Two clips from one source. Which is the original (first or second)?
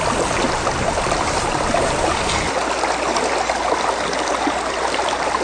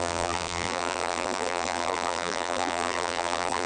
first